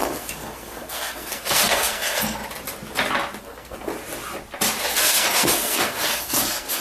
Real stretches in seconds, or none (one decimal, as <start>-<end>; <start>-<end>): 2.4-3.4; 3.9-4.9